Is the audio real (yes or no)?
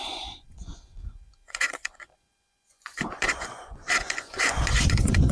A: no